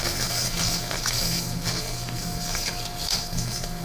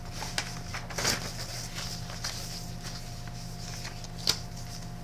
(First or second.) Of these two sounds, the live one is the second